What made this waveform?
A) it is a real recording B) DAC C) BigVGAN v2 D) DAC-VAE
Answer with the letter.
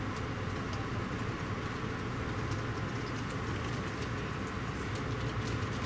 A